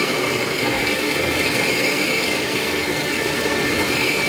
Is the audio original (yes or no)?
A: no